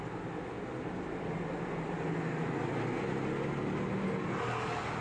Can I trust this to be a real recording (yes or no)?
yes